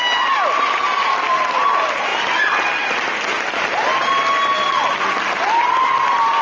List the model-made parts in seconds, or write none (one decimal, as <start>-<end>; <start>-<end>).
none